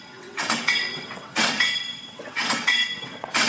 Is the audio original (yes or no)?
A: no